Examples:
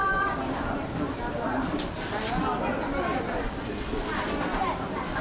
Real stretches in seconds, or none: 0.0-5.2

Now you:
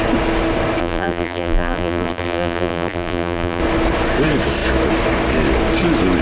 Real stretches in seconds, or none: 0.0-0.8; 3.6-6.2

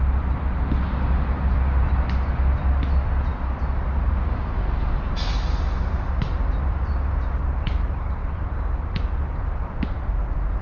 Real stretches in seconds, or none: 0.0-10.6

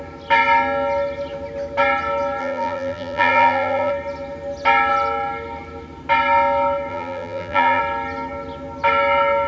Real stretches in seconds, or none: 0.0-2.4; 3.9-6.9; 7.8-9.5

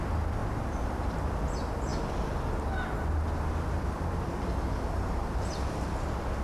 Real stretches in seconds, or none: 0.0-0.4; 1.3-6.4

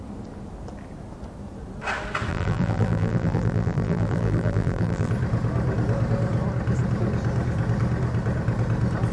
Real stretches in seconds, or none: 0.0-2.3; 5.1-9.1

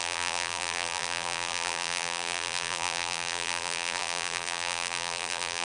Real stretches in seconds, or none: none

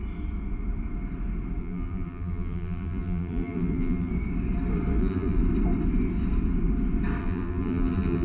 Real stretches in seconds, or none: 0.0-1.6; 4.1-5.0; 5.4-7.2